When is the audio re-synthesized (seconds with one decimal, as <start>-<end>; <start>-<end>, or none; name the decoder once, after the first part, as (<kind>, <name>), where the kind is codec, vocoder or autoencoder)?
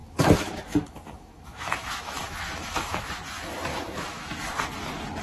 0.0-3.1 (autoencoder, DAC-VAE); 3.7-4.6